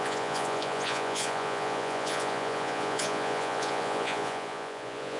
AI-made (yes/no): yes